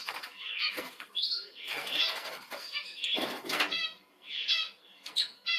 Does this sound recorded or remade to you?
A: remade